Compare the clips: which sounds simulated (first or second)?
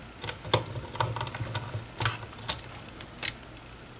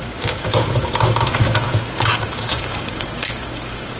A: second